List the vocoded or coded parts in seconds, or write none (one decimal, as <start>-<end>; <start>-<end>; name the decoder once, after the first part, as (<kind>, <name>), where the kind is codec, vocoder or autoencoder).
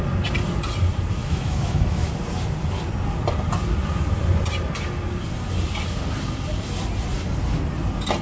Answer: 1.2-2.1 (autoencoder, DAC-VAE)